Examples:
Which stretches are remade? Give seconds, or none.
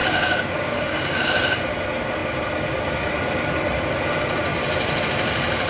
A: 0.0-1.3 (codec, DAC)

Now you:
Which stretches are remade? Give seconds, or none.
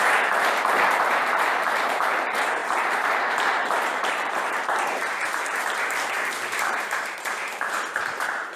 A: 0.0-8.6 (vocoder, BigVGAN v2)